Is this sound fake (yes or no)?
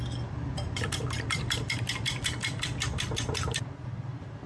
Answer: yes